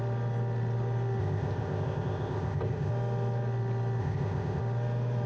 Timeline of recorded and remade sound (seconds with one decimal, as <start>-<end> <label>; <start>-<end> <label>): 0.0-1.2 recorded; 1.2-2.9 remade; 2.9-4.0 recorded; 4.0-4.6 remade; 4.6-5.3 recorded